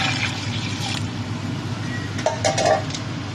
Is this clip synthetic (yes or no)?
no